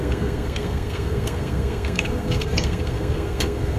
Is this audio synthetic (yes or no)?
yes